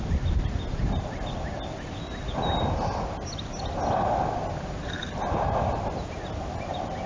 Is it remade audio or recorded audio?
recorded